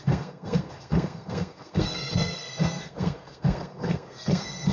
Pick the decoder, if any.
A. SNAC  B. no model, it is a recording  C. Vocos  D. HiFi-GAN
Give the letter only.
A